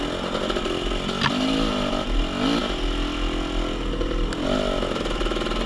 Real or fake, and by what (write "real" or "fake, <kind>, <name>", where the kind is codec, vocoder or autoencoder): real